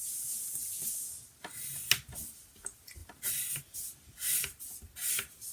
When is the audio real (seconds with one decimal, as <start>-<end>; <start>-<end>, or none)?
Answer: 0.0-5.5